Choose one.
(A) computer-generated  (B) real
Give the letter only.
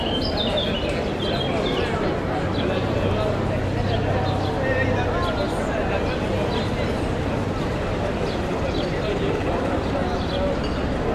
B